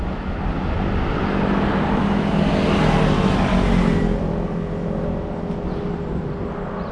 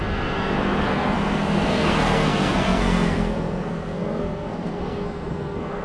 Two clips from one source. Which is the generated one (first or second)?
second